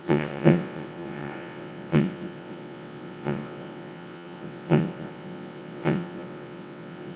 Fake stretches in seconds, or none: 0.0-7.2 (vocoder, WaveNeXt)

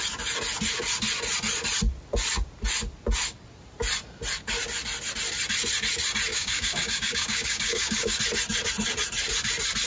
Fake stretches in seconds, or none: 6.3-8.2 (codec, DAC)

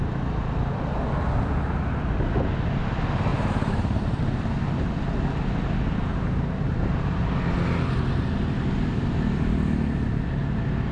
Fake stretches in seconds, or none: 3.3-4.2 (vocoder, BigVGAN v2); 6.1-7.2

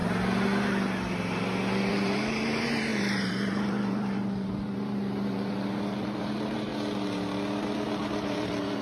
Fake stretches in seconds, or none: 1.9-6.7 (vocoder, BigVGAN v2); 7.9-8.8

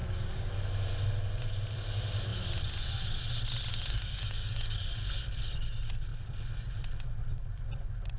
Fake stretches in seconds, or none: 0.0-0.5 (codec, DAC); 3.7-4.9